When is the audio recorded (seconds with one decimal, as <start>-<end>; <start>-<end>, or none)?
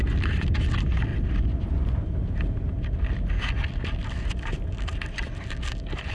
1.1-4.3